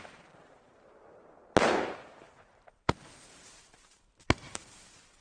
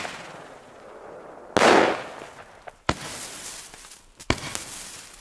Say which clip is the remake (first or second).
first